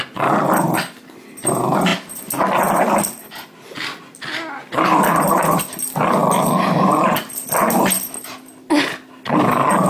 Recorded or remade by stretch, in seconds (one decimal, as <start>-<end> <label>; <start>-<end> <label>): 0.0-9.9 recorded